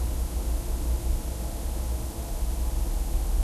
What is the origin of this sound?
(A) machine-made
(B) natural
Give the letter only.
B